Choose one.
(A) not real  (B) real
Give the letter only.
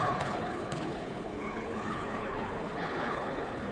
A